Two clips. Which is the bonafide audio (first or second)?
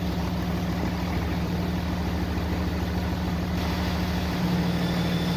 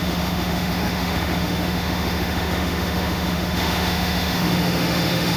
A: first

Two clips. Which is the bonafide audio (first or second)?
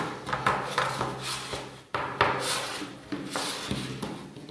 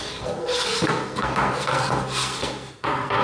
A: first